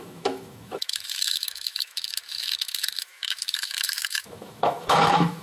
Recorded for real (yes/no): no